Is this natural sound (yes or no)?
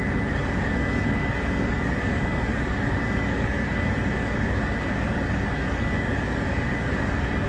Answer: no